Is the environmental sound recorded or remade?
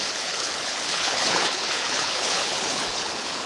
remade